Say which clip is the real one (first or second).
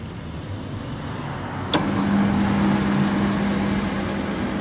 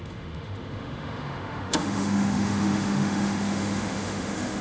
first